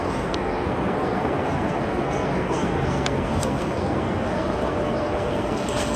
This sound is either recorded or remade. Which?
remade